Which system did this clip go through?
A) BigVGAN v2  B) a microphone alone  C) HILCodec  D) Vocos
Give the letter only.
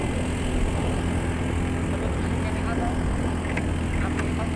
B